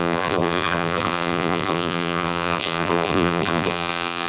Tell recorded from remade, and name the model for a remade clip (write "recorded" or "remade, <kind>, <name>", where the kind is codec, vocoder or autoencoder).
remade, vocoder, BigVGAN v2